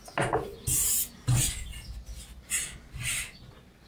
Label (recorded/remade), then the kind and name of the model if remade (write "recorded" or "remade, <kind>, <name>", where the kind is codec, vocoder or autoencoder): recorded